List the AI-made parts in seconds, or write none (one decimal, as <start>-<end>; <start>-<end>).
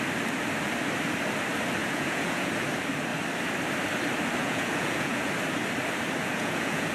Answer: 1.8-2.5; 4.4-5.3; 6.2-6.9